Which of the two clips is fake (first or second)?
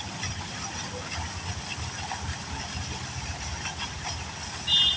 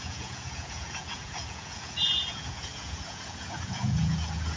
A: second